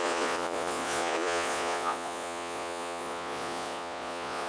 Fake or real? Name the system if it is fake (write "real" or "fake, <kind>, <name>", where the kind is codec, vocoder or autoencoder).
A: fake, vocoder, Vocos